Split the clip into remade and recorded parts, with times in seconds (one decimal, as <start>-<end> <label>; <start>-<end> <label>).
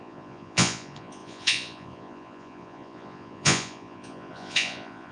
0.0-5.1 remade